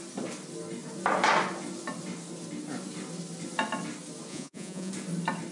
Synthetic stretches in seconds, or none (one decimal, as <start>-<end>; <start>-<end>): 4.3-4.9